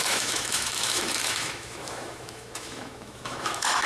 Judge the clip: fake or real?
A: fake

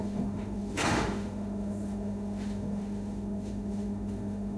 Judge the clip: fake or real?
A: fake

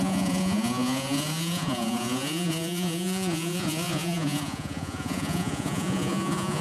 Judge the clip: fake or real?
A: fake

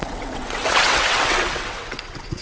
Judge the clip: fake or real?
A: fake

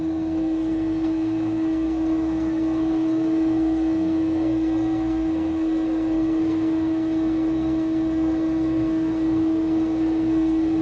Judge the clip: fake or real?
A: fake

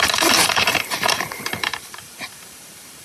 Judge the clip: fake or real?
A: fake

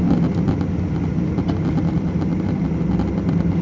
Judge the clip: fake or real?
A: real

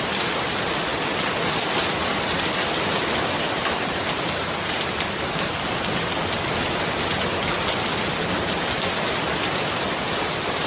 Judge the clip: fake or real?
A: real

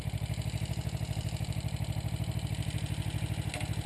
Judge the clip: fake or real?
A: real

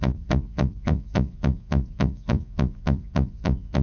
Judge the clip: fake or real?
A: fake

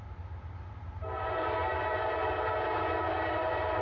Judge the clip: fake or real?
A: real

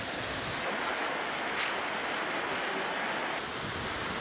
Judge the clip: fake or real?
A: real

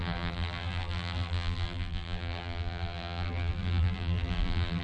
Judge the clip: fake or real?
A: fake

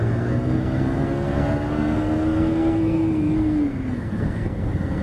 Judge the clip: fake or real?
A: fake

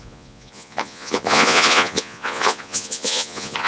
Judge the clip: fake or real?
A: fake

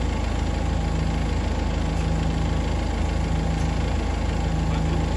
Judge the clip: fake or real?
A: real